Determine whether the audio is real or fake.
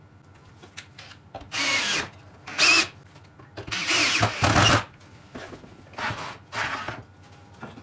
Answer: real